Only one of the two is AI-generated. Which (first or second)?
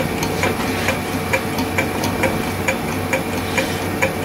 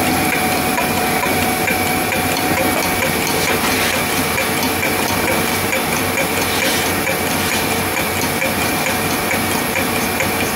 second